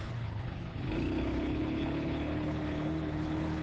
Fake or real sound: fake